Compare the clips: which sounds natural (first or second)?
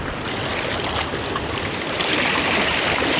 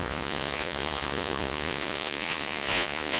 first